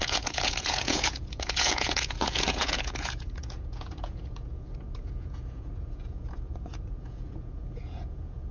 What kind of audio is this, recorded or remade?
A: remade